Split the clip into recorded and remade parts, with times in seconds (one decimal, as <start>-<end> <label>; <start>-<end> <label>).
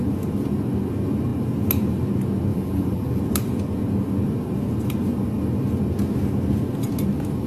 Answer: 0.0-2.5 recorded; 2.5-3.2 remade; 3.2-7.5 recorded